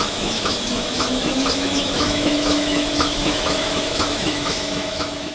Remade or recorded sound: remade